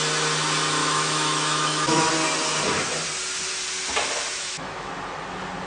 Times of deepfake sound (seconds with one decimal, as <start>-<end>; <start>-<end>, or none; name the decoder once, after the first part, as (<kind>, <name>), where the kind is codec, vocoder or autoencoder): 0.8-2.1 (autoencoder, DAC-VAE); 4.3-4.9